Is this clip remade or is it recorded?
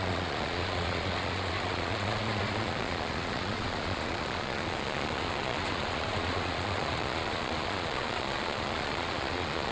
remade